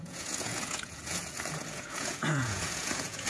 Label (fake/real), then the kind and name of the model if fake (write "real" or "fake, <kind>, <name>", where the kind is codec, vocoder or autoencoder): fake, vocoder, Vocos